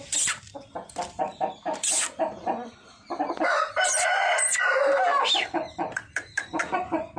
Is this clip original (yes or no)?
no